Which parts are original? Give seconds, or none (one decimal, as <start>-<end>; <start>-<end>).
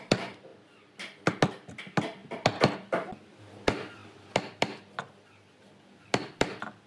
0.0-6.9